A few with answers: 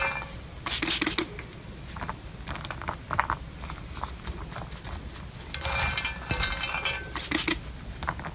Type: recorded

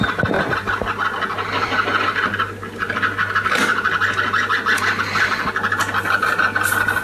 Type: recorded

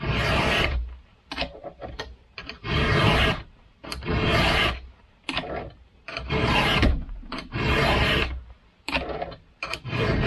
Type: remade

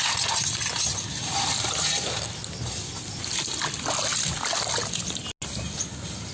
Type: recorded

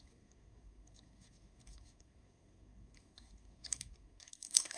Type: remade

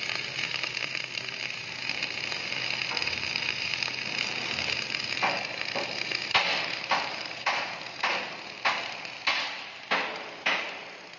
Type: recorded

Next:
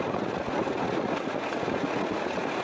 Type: remade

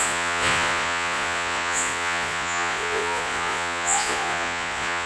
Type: remade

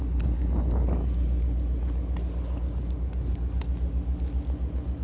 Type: recorded